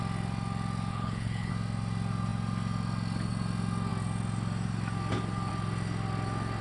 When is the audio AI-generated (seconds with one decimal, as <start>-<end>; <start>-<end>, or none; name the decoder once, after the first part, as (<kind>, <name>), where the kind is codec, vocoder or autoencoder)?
0.9-1.5 (codec, HILCodec)